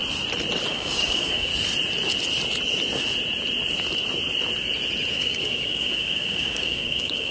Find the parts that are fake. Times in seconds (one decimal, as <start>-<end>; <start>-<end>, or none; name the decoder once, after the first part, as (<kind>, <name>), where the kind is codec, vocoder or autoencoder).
0.7-1.5 (codec, DAC); 5.1-7.3